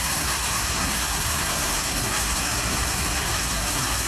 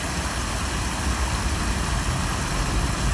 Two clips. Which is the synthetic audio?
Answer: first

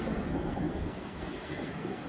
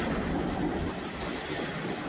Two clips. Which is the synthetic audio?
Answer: first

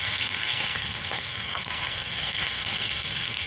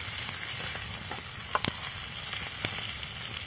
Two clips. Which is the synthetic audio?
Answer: first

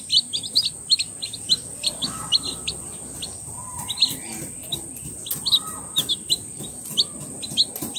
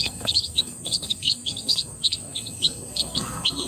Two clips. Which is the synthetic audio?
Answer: second